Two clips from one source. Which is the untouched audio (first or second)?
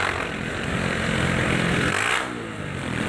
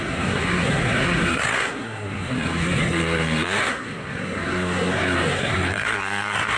first